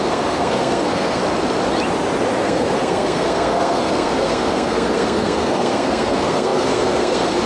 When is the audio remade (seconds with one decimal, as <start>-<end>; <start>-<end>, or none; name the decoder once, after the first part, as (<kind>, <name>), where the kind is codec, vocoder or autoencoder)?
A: 0.0-1.2 (codec, SNAC); 2.4-7.5